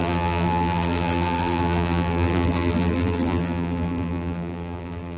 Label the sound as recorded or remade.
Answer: remade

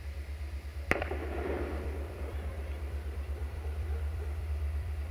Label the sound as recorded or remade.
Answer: remade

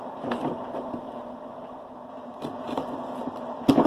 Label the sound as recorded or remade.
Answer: recorded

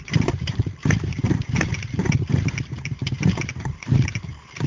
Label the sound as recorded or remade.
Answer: remade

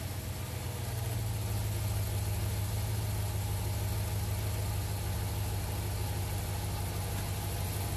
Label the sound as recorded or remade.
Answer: recorded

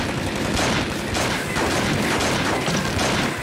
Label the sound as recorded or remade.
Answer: recorded